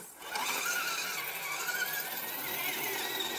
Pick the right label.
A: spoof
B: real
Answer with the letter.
B